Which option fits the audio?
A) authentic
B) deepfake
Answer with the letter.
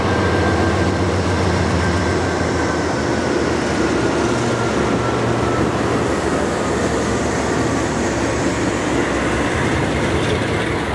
A